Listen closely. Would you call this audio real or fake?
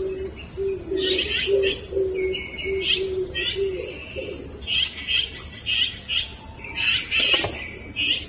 real